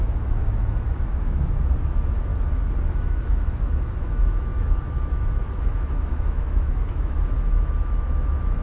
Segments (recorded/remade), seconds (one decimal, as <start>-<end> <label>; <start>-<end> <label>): 0.0-2.3 remade; 2.3-2.9 recorded; 2.9-8.6 remade